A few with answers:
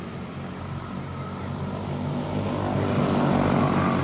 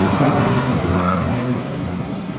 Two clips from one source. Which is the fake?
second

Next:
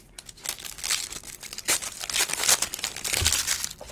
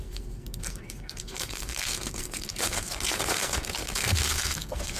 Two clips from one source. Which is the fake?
second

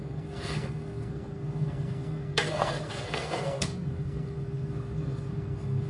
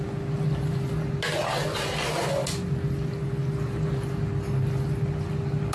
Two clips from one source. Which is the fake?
first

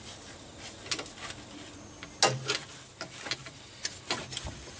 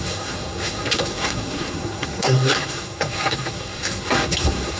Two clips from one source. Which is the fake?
second